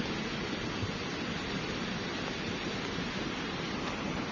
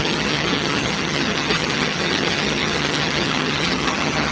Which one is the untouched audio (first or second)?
first